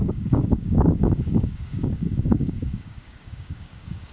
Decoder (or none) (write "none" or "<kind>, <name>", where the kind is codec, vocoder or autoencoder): codec, DAC